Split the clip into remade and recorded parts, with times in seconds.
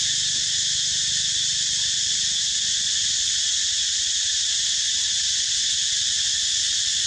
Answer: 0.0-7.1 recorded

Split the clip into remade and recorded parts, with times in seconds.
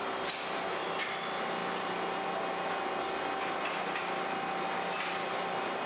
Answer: 0.0-5.9 recorded